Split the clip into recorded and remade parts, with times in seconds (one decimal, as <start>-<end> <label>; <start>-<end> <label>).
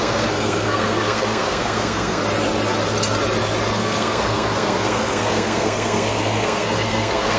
0.0-2.2 remade; 2.2-3.7 recorded; 3.7-7.4 remade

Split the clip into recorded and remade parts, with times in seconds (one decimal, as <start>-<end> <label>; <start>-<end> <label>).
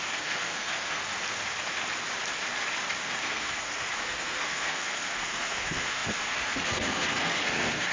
0.0-1.0 remade; 1.0-3.2 recorded; 3.2-7.9 remade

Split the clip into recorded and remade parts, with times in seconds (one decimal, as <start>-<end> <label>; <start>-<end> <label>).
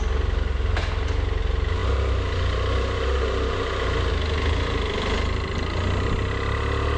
0.0-7.0 recorded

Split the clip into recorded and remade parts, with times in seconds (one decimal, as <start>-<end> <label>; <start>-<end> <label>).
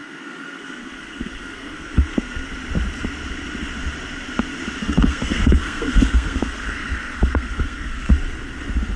0.0-2.5 remade; 2.5-4.8 recorded; 4.8-8.1 remade; 8.1-9.0 recorded